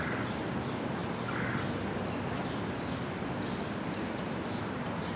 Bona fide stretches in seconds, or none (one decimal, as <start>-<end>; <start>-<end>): 0.0-5.2